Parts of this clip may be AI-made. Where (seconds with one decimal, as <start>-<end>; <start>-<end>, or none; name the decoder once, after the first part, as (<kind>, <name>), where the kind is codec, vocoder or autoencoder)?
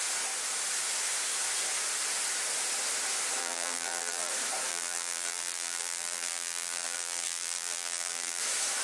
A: 3.4-4.3 (vocoder, BigVGAN v2); 4.7-8.4